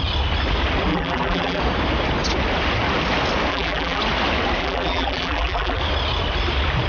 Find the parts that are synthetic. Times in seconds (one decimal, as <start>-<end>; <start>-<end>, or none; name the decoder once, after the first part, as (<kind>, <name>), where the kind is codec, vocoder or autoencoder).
0.9-1.6 (vocoder, BigVGAN v2); 3.5-4.0; 4.6-5.8